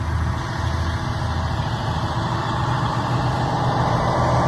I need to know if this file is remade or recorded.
recorded